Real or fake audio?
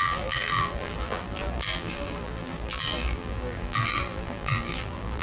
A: fake